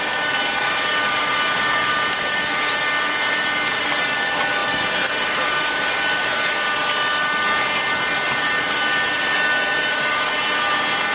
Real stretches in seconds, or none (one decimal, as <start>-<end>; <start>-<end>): 0.0-11.1